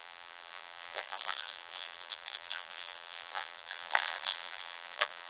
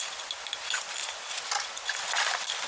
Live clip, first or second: second